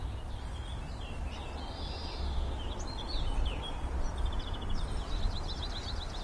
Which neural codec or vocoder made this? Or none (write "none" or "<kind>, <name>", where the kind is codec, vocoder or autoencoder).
none